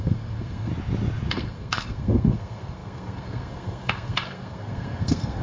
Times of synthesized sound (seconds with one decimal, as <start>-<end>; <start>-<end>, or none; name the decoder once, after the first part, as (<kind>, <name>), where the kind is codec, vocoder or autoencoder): 0.0-0.7 (codec, SNAC); 1.3-5.4